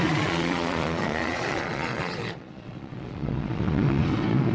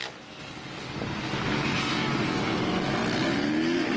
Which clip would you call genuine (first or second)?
second